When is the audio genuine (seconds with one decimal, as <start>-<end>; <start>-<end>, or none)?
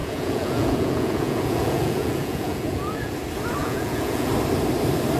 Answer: 3.1-3.6; 4.3-5.2